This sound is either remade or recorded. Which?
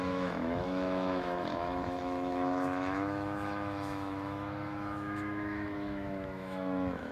remade